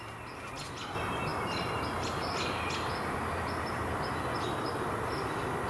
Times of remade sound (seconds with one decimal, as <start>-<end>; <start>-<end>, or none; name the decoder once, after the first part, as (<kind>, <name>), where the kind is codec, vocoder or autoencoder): none

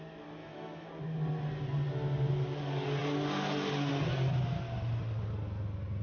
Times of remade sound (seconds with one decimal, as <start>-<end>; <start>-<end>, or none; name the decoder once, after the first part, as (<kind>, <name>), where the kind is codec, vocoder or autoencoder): 0.4-0.9 (autoencoder, DAC-VAE)

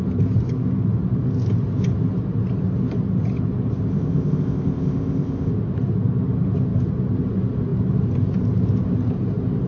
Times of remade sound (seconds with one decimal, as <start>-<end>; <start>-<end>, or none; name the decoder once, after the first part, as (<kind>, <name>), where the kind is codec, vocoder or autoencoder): 3.9-5.5 (codec, ZipCodec)

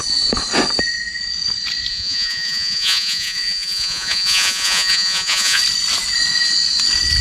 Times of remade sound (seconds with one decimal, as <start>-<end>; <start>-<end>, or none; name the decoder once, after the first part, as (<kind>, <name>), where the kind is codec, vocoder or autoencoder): 1.9-5.6 (vocoder, Vocos)

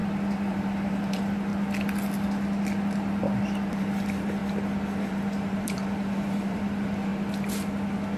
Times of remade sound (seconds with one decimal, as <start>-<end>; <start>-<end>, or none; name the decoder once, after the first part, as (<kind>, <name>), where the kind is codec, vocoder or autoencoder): 0.5-1.5 (vocoder, BigVGAN v2); 3.7-4.4; 5.1-7.1

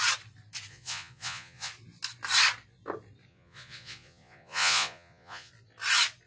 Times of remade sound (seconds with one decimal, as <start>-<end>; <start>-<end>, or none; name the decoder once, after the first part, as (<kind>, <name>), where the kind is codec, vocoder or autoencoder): 0.7-1.7 (vocoder, Vocos); 3.3-5.5